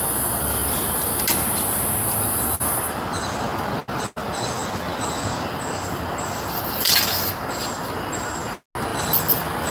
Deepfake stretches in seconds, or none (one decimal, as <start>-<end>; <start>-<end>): none